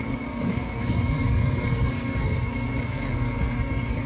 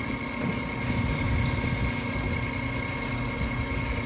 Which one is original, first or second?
second